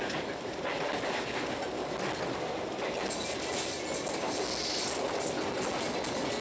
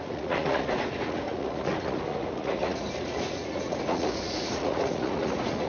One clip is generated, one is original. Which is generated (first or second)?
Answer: second